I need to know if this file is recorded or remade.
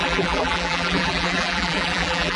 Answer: remade